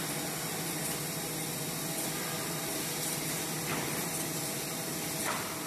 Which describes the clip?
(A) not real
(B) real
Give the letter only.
A